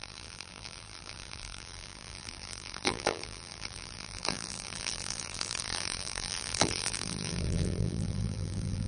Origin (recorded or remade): remade